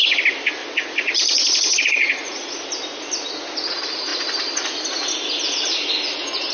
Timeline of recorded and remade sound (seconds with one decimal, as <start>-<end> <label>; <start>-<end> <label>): 0.0-0.6 recorded; 0.6-2.7 remade; 2.7-6.5 recorded